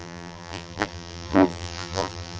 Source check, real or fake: fake